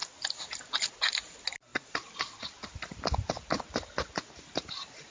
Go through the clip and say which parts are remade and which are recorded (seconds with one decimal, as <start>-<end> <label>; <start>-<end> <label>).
0.0-5.1 recorded